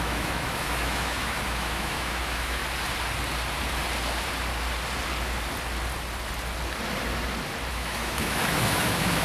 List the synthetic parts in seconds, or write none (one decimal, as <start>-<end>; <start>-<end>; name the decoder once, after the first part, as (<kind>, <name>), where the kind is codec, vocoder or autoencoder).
0.0-2.6 (autoencoder, DAC-VAE); 7.7-9.2